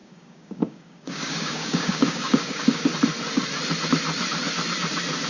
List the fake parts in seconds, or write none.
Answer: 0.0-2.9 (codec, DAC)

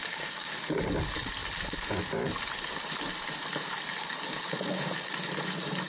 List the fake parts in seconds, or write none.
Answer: 0.0-0.8 (codec, DAC)

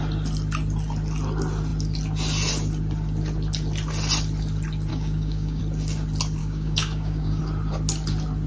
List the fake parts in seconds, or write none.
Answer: 4.9-5.6 (codec, DAC); 6.4-7.4

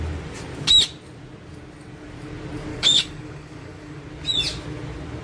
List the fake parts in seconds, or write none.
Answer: 2.7-4.0 (codec, DAC)

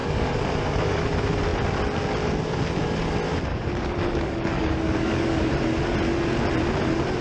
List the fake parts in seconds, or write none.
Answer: 0.0-1.0 (codec, DAC); 3.5-5.5

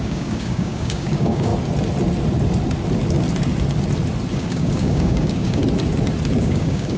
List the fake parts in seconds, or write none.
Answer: 0.0-1.5 (codec, DAC); 4.3-5.6; 6.4-7.0